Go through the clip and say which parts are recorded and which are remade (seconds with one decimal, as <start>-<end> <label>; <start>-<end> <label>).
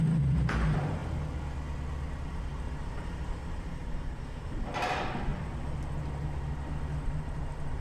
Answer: 0.0-1.0 remade; 1.0-2.1 recorded; 2.1-5.3 remade; 5.3-7.0 recorded; 7.0-7.8 remade